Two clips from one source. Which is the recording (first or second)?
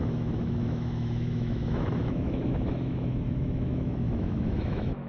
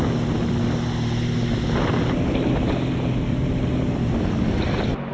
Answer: second